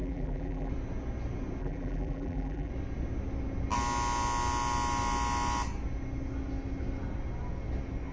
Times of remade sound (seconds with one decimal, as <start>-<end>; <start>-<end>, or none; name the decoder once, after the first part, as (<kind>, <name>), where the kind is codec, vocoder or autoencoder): 0.0-0.7 (vocoder, BigVGAN v2); 1.6-2.7